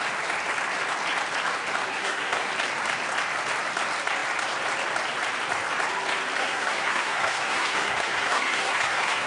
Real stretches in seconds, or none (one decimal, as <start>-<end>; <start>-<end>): 0.0-1.9; 2.5-6.4